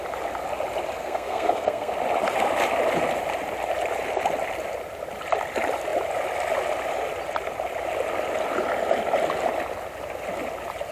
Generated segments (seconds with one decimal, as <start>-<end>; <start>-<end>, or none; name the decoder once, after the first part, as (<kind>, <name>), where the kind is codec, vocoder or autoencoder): 1.0-1.9 (codec, SNAC)